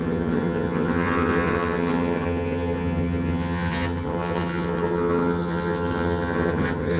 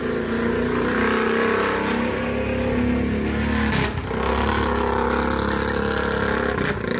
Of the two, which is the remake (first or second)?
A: first